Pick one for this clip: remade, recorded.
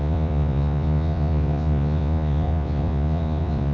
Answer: remade